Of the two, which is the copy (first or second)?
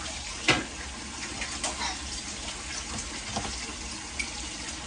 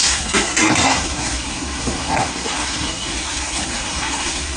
second